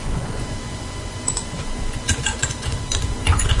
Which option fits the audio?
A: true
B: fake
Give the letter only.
B